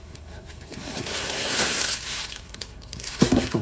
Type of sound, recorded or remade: remade